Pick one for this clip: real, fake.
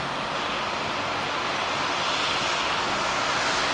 real